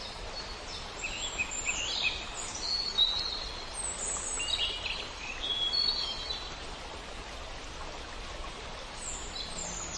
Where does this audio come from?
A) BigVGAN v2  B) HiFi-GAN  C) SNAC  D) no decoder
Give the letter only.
D